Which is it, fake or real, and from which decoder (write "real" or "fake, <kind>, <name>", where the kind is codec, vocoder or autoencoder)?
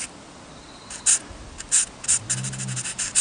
real